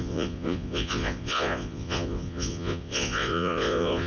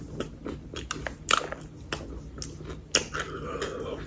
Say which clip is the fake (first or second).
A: first